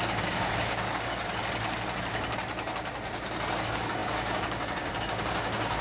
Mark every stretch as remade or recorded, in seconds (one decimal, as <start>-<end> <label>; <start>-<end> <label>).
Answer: 0.0-1.4 remade; 1.4-3.5 recorded; 3.5-5.8 remade